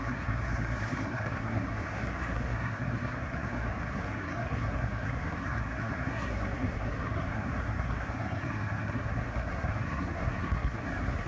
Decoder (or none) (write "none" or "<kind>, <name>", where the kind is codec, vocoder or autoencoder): codec, SNAC